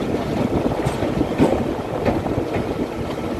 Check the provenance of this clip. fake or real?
real